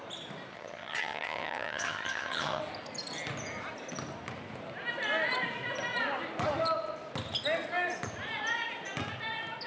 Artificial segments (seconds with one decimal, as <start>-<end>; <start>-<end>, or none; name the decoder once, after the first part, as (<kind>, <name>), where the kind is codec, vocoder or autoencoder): 0.5-2.6 (vocoder, HiFi-GAN)